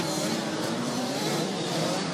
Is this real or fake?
fake